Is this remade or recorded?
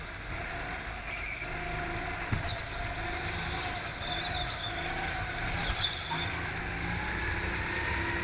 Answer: recorded